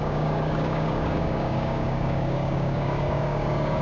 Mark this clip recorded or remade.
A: remade